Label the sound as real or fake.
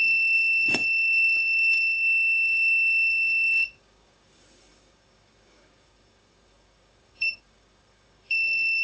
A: fake